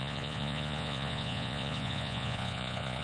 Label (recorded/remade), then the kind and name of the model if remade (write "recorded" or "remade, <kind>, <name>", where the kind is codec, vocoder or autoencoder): remade, vocoder, Vocos